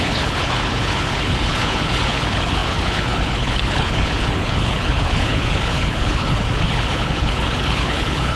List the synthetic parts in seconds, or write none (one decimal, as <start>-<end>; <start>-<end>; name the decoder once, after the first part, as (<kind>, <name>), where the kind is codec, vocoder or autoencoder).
0.0-8.4 (codec, HILCodec)

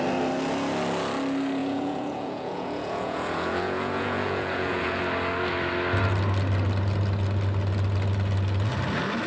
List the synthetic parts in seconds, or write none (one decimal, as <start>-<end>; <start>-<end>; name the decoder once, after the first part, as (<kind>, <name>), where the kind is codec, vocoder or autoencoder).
1.6-5.0 (vocoder, Vocos)

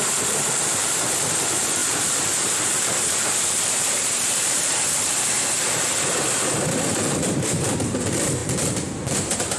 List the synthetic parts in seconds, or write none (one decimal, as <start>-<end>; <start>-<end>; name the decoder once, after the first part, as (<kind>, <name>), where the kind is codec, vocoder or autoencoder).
0.0-8.4 (vocoder, BigVGAN v2); 9.2-9.6

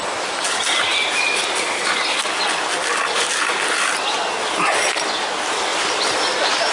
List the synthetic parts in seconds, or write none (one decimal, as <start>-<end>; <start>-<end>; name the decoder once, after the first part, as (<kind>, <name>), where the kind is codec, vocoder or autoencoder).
none